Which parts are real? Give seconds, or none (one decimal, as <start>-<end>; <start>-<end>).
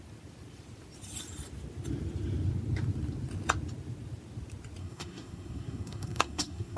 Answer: 0.0-4.8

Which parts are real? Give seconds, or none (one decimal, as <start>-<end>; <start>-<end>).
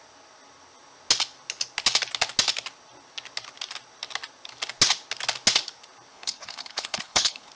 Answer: 0.0-6.1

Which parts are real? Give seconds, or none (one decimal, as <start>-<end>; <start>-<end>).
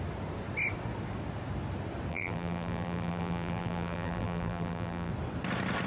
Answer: 0.0-2.1; 5.1-5.9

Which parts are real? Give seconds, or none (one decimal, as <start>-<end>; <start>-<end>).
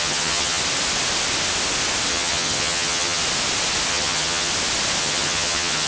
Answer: 0.6-2.1; 3.2-3.9; 4.5-5.0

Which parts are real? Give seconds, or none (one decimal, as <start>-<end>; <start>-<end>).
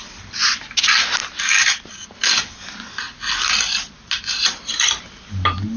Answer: 0.0-5.8